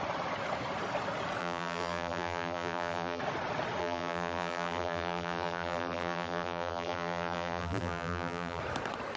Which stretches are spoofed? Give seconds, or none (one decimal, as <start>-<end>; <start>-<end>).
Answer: 1.4-3.2; 3.8-8.6